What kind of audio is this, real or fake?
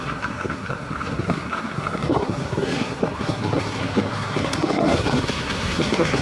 fake